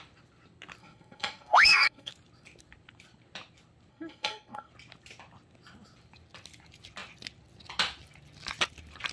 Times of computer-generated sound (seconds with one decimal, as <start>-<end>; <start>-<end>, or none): 0.8-2.1; 3.9-4.7